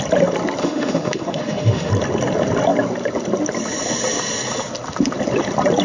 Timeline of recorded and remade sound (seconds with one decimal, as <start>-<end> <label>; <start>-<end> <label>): 0.0-0.6 recorded; 0.6-1.9 remade; 1.9-5.8 recorded